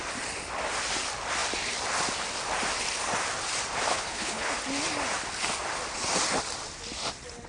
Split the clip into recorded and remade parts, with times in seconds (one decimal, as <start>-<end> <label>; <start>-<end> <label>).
0.0-3.9 recorded; 3.9-4.5 remade; 4.5-7.5 recorded